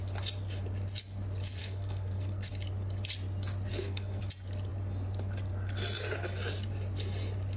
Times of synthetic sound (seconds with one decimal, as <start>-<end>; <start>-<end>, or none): 1.6-2.5; 3.7-4.2